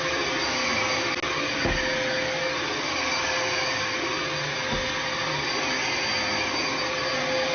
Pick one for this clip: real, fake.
real